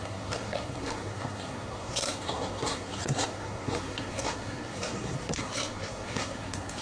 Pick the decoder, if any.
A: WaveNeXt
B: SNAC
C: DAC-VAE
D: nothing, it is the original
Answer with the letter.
B